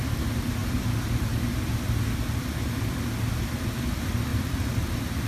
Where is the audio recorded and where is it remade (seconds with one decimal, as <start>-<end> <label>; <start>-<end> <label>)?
0.0-5.3 recorded